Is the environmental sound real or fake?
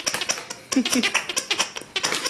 real